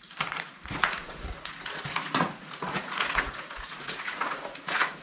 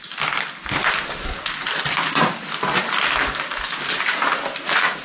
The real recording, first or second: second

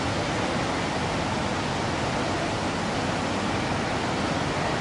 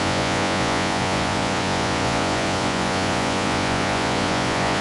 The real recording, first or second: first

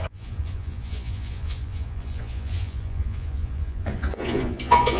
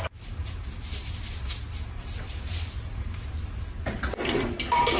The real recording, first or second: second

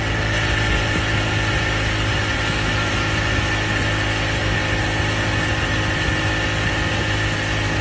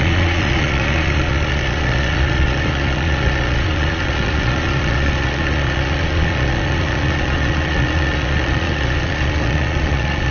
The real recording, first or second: first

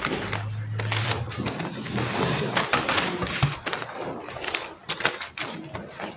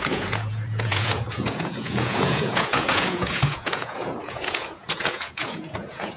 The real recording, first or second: first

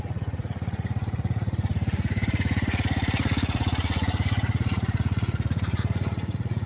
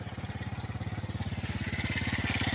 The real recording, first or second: second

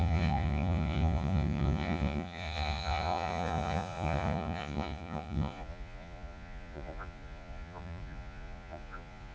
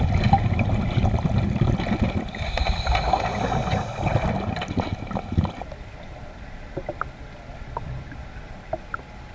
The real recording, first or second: second